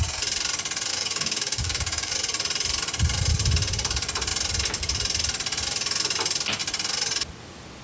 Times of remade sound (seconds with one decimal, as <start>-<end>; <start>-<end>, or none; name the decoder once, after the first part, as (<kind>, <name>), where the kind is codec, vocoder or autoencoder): 0.9-2.1 (codec, DAC)